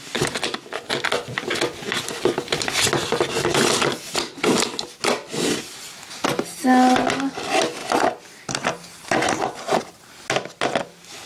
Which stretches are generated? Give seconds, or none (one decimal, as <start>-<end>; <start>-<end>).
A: none